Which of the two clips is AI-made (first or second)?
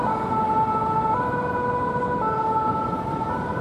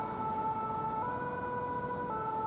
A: first